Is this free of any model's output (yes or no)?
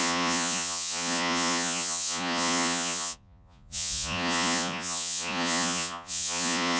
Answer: no